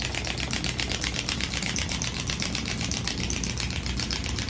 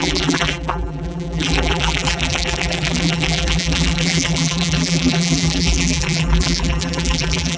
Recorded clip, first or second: first